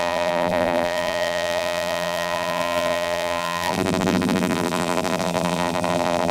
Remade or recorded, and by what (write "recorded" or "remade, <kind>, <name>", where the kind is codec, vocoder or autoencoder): remade, vocoder, BigVGAN v2